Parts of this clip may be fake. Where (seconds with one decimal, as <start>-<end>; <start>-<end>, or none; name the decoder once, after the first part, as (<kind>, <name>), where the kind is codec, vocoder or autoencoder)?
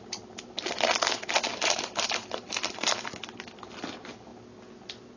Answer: 1.5-2.2 (vocoder, BigVGAN v2)